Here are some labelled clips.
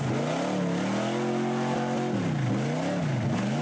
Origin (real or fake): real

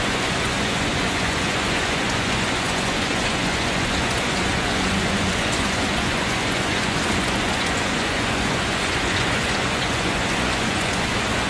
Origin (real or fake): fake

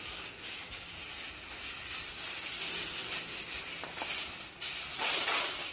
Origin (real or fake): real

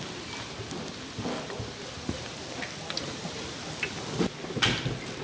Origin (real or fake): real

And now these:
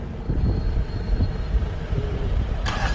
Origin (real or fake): fake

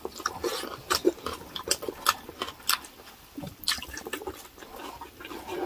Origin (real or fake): real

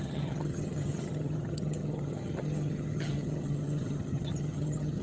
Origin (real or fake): fake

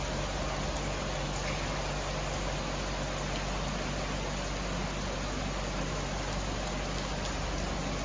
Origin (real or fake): real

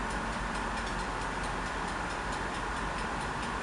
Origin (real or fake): fake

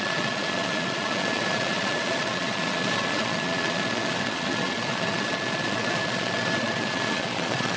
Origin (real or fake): fake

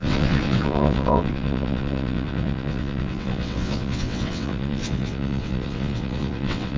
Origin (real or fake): fake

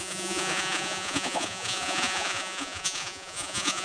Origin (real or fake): fake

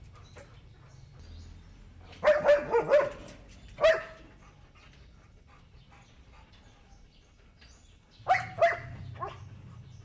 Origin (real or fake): real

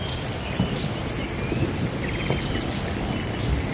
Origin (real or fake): real